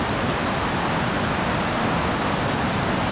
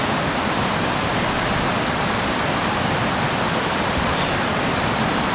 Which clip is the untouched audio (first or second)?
first